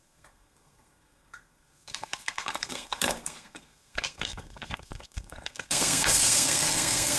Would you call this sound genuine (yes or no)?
no